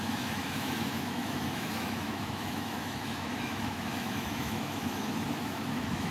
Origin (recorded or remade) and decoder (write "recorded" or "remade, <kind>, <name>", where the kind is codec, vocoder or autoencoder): remade, autoencoder, DAC-VAE